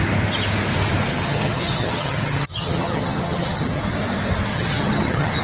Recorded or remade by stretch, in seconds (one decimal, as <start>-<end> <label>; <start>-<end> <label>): 0.0-1.1 recorded; 1.1-3.8 remade; 3.8-4.5 recorded; 4.5-5.4 remade